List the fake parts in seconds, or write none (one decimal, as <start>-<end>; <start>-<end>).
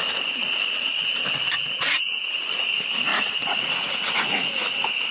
0.4-1.1; 3.1-4.3